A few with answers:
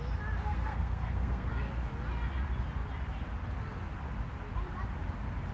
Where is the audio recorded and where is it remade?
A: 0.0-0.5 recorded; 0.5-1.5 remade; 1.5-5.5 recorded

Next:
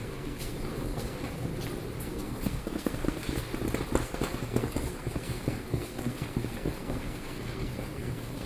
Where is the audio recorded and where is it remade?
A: 0.0-1.5 remade; 1.5-2.0 recorded; 2.0-3.5 remade; 3.5-4.0 recorded; 4.0-8.5 remade

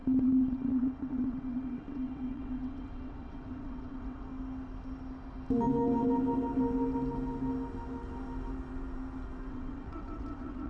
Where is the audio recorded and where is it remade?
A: 0.0-4.3 remade; 4.3-9.5 recorded; 9.5-10.7 remade

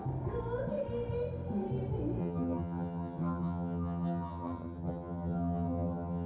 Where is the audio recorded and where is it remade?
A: 0.0-2.2 recorded; 2.2-6.3 remade

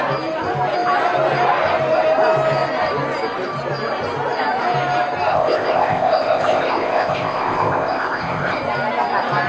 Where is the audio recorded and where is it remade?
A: 0.0-5.3 recorded; 5.3-8.6 remade; 8.6-9.5 recorded

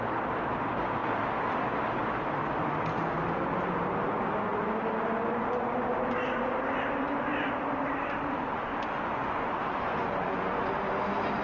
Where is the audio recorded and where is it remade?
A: 0.0-8.4 recorded; 8.4-10.7 remade; 10.7-11.4 recorded

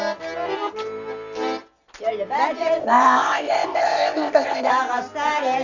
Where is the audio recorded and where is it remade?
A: 0.0-2.8 recorded; 2.8-4.7 remade; 4.7-5.6 recorded

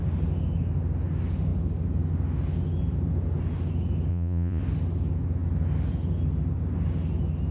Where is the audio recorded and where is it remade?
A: 0.0-4.1 recorded; 4.1-4.6 remade; 4.6-7.5 recorded